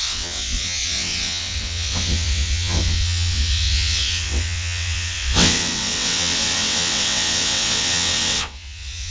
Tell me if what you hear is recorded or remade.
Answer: remade